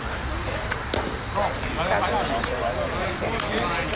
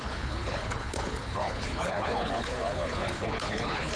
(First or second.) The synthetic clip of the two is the second